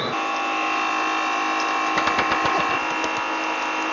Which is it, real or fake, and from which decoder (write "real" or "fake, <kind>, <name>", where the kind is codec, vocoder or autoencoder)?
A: real